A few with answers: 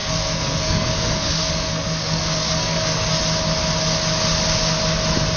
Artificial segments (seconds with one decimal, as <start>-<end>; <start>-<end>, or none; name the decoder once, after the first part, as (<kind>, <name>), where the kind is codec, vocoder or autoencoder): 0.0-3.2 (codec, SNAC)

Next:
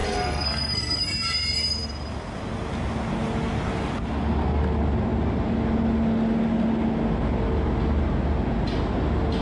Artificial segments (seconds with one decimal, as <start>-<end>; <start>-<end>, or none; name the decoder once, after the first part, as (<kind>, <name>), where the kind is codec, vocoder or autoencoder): 0.0-1.0 (codec, SNAC)

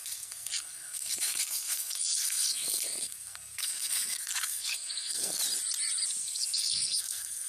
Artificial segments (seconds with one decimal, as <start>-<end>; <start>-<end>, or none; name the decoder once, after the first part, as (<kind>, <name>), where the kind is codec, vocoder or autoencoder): 0.0-5.4 (codec, SNAC); 6.2-7.5

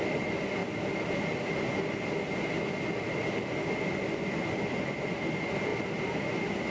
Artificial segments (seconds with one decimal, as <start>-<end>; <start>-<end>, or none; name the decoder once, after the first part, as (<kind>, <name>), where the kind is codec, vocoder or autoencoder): none

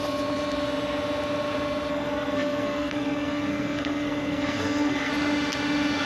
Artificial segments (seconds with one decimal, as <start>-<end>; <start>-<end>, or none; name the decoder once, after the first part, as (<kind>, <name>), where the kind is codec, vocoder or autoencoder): 1.9-5.1 (codec, SNAC)